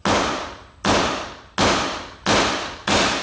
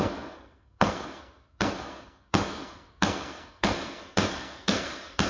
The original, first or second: first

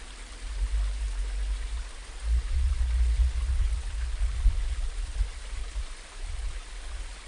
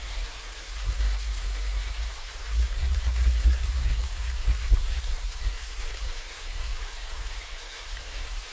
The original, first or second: first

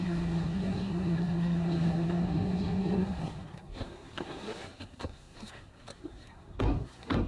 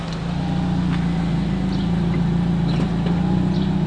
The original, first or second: second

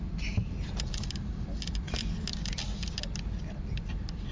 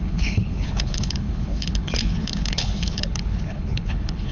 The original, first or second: first